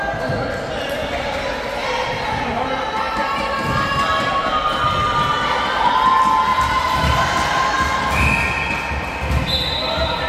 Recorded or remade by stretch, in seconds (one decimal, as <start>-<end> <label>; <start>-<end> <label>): 0.0-1.8 recorded; 1.8-2.5 remade; 2.5-6.5 recorded; 6.5-7.2 remade; 7.2-10.3 recorded